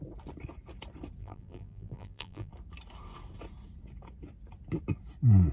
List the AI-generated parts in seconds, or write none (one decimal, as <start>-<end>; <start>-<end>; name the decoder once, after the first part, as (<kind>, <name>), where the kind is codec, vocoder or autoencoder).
1.2-2.5 (vocoder, BigVGAN v2)